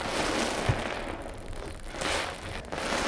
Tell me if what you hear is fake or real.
real